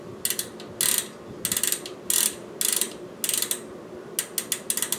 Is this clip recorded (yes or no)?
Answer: yes